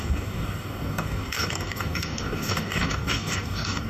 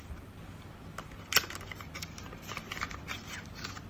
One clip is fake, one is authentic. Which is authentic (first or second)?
second